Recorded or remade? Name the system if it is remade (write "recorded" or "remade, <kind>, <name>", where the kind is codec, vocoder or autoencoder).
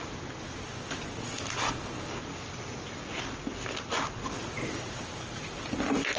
recorded